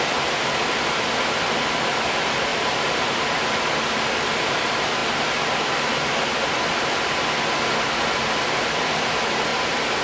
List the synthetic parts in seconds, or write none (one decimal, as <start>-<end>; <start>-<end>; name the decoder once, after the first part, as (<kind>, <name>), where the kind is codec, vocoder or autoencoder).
2.5-3.2 (vocoder, BigVGAN v2); 9.5-10.0